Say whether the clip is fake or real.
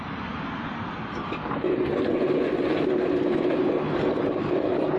real